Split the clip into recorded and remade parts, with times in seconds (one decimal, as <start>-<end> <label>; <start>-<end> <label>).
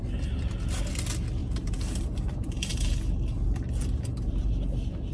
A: 0.0-1.4 recorded; 1.4-4.5 remade; 4.5-5.1 recorded